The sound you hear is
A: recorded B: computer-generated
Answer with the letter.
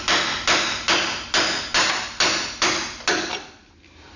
A